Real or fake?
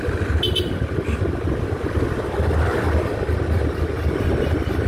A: real